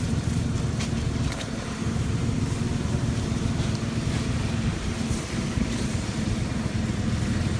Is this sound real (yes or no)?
no